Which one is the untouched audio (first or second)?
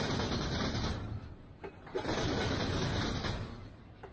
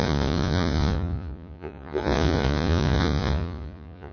first